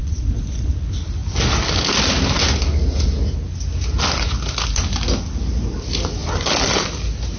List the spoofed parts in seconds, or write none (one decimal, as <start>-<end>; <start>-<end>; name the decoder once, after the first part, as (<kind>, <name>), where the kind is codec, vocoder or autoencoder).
0.0-0.7 (vocoder, Vocos)